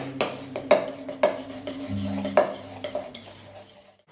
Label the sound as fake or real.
real